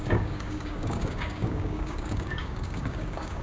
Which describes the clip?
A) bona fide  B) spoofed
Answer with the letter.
B